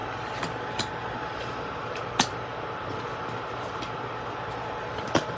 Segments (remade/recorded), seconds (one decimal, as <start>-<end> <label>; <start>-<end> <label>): 0.0-5.4 recorded